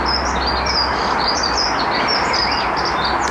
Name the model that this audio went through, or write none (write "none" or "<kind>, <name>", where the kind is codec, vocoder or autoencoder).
none